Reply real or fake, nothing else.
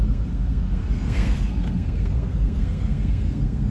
fake